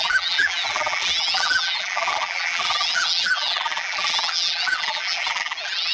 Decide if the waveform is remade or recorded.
remade